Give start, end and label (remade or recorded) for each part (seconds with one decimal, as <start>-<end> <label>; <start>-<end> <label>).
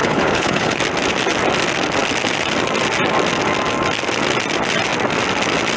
0.0-0.8 remade; 0.8-5.8 recorded